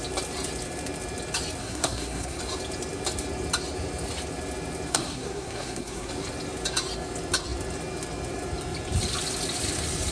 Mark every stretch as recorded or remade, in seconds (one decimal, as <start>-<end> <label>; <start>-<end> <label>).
0.0-1.6 recorded; 1.6-2.4 remade; 2.4-4.9 recorded; 4.9-6.1 remade; 6.1-10.1 recorded